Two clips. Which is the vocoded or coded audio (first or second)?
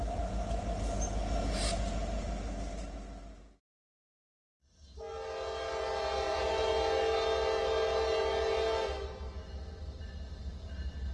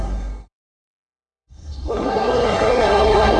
second